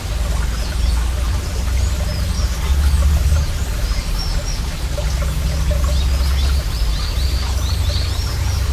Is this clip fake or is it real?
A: real